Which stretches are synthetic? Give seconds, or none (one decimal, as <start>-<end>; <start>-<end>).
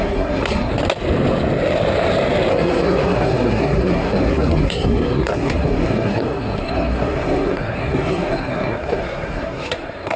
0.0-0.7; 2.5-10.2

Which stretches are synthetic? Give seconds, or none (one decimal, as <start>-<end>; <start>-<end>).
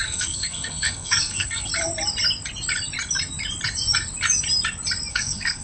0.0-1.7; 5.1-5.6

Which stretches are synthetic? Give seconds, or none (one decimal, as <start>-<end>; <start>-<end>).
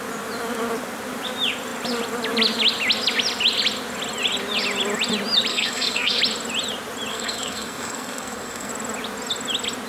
5.5-6.2; 7.1-8.7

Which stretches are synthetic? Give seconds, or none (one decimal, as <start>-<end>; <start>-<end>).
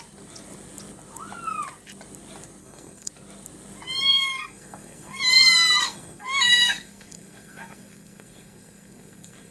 2.6-3.1; 4.1-5.2; 5.8-9.5